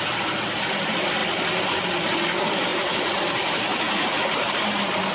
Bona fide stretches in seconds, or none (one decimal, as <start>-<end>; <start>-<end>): 1.2-2.1